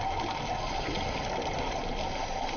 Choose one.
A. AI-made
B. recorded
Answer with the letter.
B